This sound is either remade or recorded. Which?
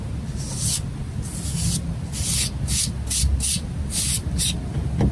recorded